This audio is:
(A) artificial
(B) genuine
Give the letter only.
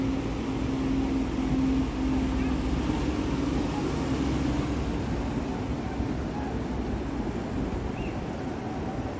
B